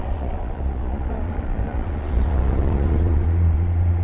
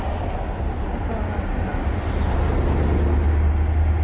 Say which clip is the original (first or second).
second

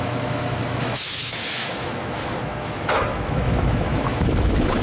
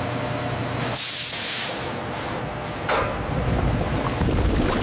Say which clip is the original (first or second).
second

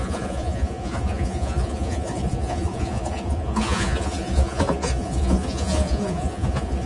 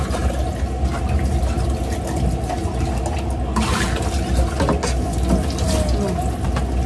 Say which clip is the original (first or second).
second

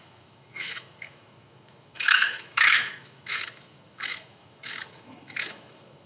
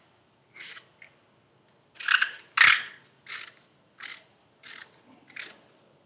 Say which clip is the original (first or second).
second